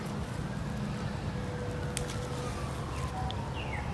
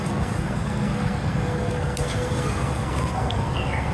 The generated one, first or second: second